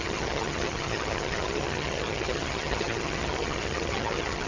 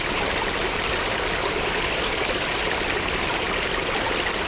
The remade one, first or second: first